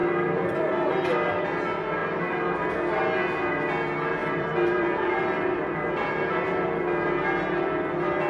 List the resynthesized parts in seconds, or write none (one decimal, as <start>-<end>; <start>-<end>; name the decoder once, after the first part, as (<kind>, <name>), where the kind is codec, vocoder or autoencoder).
0.0-1.4 (vocoder, BigVGAN v2); 4.2-5.5